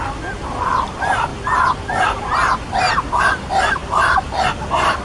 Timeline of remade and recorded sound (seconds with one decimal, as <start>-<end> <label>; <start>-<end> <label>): 0.0-5.0 recorded